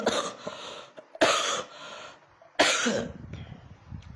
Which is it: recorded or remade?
recorded